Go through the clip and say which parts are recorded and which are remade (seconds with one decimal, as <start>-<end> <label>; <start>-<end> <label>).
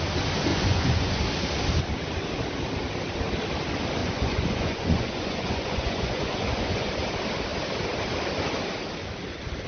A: 0.0-0.5 recorded; 0.5-1.2 remade; 1.2-4.0 recorded; 4.0-6.9 remade; 6.9-9.7 recorded